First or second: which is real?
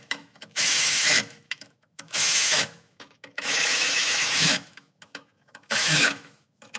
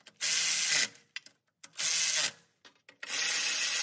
second